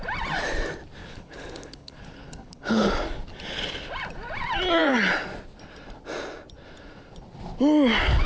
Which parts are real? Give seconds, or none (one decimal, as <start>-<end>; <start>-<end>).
0.0-1.0; 2.9-8.3